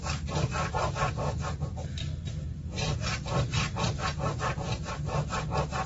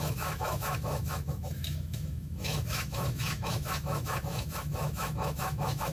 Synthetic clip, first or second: second